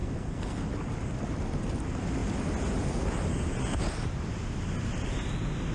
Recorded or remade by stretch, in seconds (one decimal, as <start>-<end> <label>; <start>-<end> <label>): 0.0-0.7 remade; 0.7-5.7 recorded